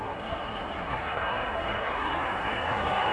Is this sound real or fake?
fake